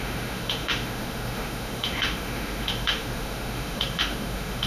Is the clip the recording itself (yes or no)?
no